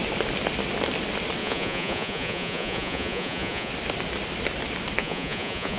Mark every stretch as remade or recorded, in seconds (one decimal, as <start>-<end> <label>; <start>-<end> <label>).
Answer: 0.0-1.4 recorded; 1.4-3.7 remade; 3.7-5.0 recorded; 5.0-5.8 remade